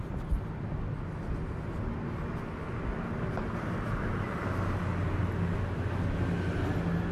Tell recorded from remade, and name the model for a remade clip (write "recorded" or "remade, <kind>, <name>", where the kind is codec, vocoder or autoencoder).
recorded